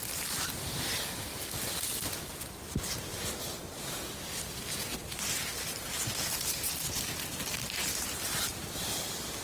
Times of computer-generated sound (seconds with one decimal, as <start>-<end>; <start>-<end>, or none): none